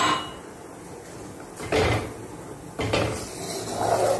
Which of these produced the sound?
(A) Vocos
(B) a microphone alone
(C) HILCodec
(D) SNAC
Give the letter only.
B